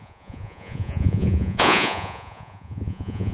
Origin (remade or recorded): remade